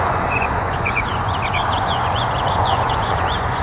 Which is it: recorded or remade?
remade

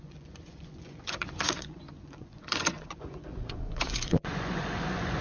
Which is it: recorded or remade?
remade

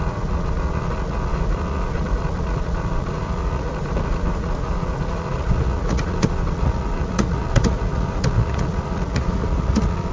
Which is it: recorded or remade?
remade